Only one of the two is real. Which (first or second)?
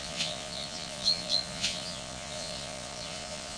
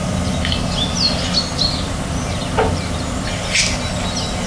second